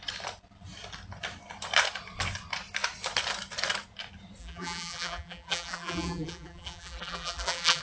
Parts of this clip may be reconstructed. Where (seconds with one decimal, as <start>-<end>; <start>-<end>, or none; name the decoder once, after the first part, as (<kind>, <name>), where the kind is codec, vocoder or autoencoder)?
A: 4.4-7.8 (vocoder, BigVGAN v2)